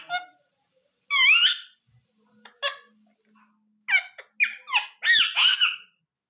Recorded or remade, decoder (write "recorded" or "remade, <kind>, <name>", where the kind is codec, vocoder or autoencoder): recorded